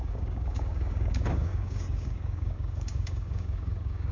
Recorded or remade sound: remade